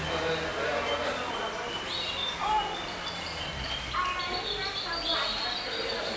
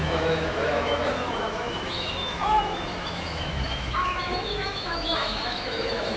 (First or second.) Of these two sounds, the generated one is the second